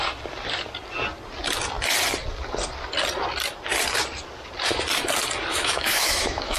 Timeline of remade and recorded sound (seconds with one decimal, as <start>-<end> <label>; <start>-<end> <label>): 0.0-5.5 recorded; 5.5-6.6 remade